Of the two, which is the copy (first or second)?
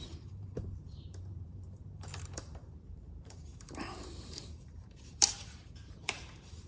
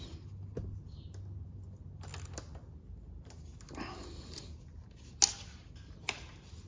first